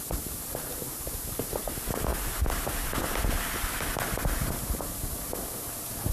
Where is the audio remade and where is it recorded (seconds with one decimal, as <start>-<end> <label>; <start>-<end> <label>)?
0.0-6.1 recorded